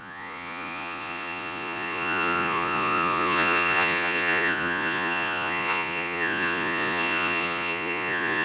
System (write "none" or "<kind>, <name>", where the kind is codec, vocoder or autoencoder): vocoder, Vocos